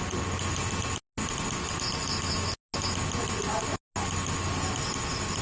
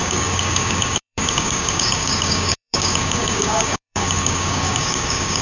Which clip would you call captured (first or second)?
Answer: first